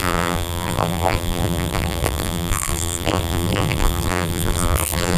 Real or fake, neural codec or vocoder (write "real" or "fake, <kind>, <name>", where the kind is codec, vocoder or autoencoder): fake, vocoder, BigVGAN v2